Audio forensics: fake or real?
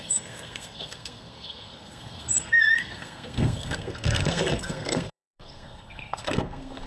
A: fake